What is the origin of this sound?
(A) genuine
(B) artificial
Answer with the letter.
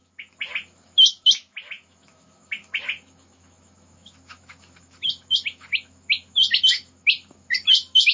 B